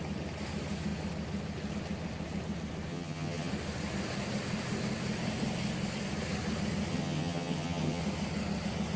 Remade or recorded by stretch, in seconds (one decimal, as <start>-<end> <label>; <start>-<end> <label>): 0.0-2.9 recorded; 2.9-3.5 remade; 3.5-6.9 recorded; 6.9-8.0 remade; 8.0-9.0 recorded